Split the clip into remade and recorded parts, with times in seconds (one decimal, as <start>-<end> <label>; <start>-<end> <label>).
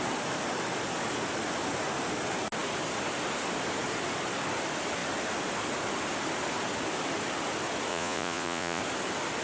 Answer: 0.0-7.9 recorded; 7.9-8.8 remade; 8.8-9.4 recorded